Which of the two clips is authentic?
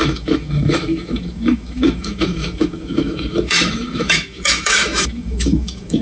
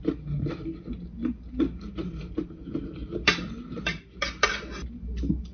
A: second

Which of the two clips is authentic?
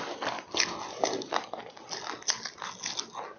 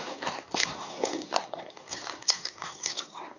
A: first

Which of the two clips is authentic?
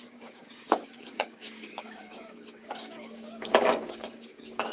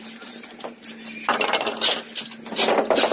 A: second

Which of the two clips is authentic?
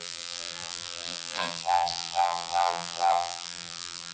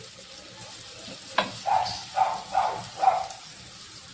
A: second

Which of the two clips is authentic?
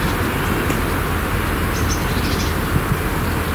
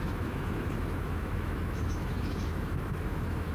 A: first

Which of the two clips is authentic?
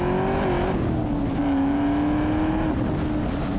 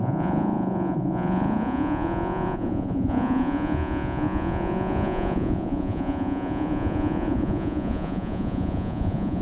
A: first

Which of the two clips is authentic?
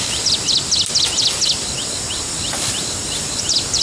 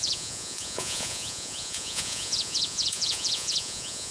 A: first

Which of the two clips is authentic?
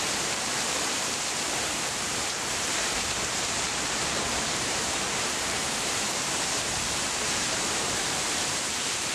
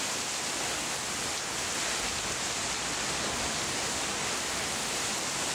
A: second